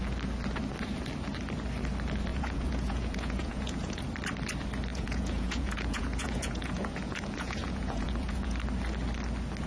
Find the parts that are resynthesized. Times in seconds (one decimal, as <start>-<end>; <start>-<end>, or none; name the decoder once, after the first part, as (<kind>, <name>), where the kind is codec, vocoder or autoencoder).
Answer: 2.3-4.0 (vocoder, Vocos); 4.9-8.6